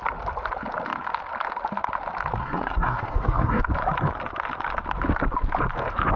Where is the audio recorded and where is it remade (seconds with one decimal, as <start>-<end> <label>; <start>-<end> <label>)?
0.0-2.4 recorded; 2.4-3.6 remade; 3.6-6.2 recorded